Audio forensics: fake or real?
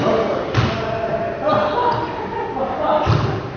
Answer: real